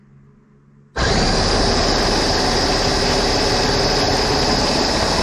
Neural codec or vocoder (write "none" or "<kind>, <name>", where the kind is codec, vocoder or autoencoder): none